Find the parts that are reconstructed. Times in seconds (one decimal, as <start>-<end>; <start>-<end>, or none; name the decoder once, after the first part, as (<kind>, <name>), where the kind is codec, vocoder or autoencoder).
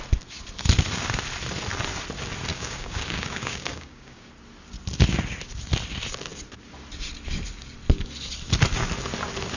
2.5-4.3 (codec, DAC)